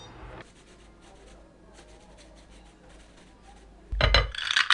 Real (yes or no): yes